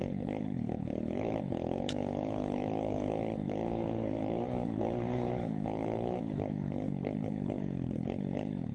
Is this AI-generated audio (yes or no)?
yes